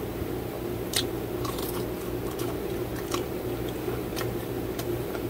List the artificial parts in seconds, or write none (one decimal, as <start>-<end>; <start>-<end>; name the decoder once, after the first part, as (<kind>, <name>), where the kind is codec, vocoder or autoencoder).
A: 0.0-1.6 (vocoder, BigVGAN v2); 2.4-5.3